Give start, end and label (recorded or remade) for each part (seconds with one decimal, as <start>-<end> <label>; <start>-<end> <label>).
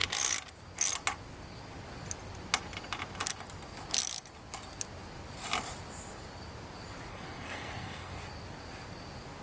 0.0-7.1 recorded; 7.1-8.2 remade; 8.2-9.4 recorded